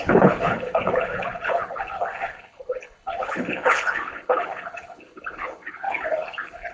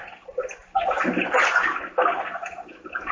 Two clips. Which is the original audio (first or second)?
second